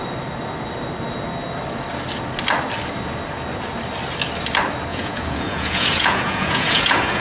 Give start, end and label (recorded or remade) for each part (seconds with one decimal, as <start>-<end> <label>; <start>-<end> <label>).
0.0-4.9 recorded; 4.9-7.2 remade